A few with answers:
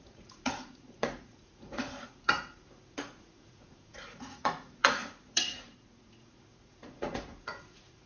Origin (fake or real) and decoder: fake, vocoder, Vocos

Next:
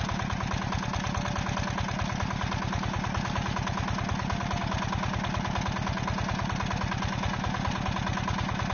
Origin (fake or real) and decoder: real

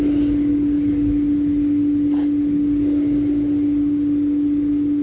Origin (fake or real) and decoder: real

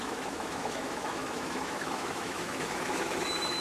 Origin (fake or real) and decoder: fake, autoencoder, DAC-VAE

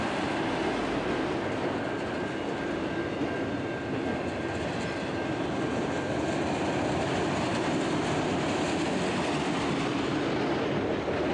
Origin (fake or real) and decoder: real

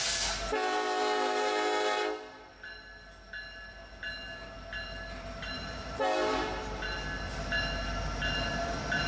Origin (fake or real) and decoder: real